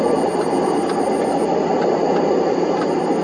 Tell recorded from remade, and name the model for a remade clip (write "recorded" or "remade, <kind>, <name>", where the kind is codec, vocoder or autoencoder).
recorded